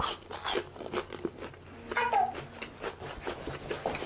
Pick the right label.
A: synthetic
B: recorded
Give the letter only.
B